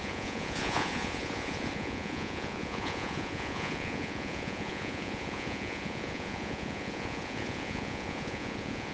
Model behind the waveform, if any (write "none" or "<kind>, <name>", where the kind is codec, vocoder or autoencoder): vocoder, Vocos